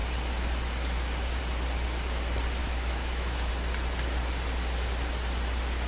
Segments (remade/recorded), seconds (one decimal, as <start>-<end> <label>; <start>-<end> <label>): 0.0-2.6 recorded; 2.6-3.5 remade; 3.5-5.9 recorded